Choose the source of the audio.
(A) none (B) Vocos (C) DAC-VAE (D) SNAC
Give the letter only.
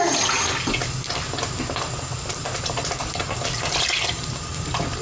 A